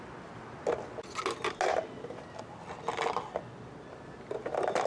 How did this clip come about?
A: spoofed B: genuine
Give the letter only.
B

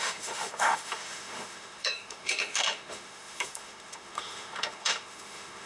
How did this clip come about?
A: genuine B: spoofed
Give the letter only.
B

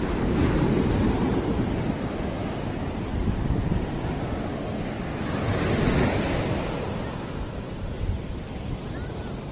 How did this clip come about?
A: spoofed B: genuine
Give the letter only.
B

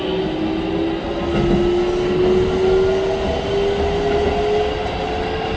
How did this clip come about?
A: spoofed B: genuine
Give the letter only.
B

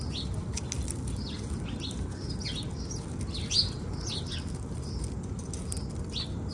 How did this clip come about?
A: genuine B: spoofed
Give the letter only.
A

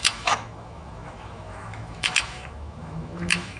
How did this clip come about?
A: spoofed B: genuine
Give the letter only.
A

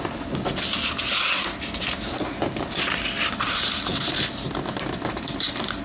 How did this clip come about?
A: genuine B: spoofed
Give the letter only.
A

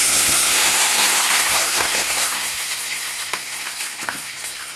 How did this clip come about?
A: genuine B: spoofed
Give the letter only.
B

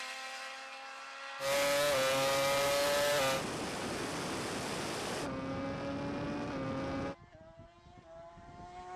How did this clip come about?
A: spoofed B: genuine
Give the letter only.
B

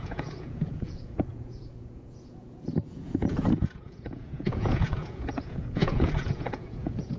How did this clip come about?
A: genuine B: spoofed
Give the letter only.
B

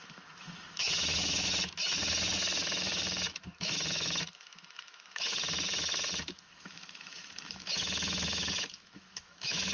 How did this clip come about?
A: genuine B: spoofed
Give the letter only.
B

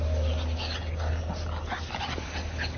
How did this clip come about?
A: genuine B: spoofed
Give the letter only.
A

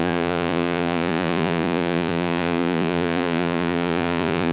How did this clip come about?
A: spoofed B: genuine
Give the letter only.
A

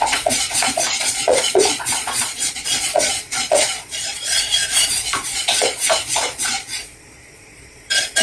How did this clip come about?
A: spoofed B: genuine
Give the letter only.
A